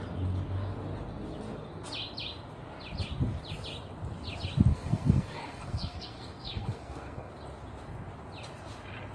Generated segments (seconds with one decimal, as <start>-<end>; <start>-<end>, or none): 4.7-7.3